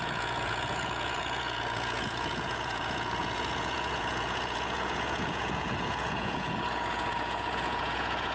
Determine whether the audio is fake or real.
fake